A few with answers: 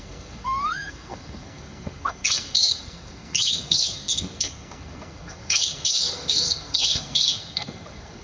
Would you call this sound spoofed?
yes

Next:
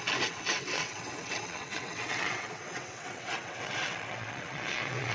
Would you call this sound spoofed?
yes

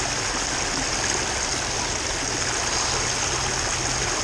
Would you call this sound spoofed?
no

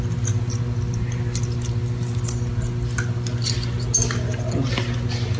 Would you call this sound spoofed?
no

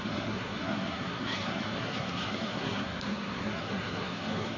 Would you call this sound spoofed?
yes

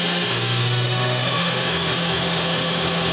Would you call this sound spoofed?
yes